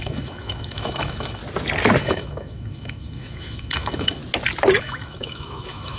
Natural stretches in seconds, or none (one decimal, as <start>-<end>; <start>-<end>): 1.4-2.0; 4.2-4.8